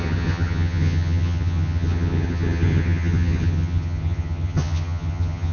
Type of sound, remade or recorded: remade